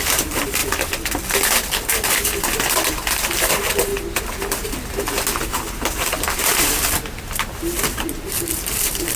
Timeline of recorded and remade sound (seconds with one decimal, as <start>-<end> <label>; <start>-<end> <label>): 0.0-0.6 remade; 0.6-3.5 recorded; 3.5-3.9 remade; 3.9-6.4 recorded; 6.4-9.2 remade